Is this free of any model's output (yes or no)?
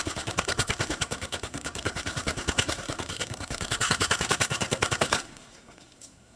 no